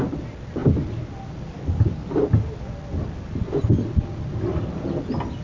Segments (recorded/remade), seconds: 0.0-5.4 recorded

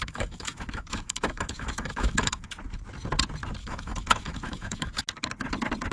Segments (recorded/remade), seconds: 0.0-2.5 remade; 2.5-3.6 recorded; 3.6-5.0 remade; 5.0-5.9 recorded

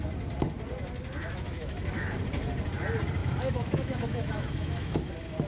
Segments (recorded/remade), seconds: 0.0-1.2 recorded; 1.2-2.2 remade; 2.2-3.2 recorded; 3.2-5.1 remade; 5.1-5.5 recorded

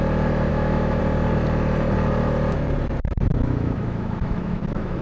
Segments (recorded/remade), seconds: 0.0-0.5 recorded; 0.5-1.0 remade; 1.0-3.3 recorded; 3.3-5.0 remade

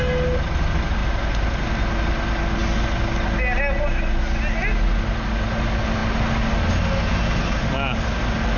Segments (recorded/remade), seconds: 0.0-8.6 recorded

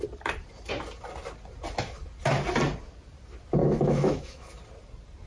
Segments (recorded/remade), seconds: 0.0-3.6 recorded; 3.6-4.5 remade; 4.5-5.3 recorded

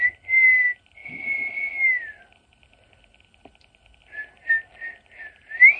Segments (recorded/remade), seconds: 0.0-5.8 recorded

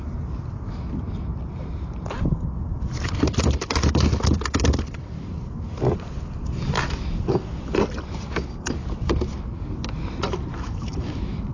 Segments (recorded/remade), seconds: 0.0-10.5 recorded; 10.5-11.5 remade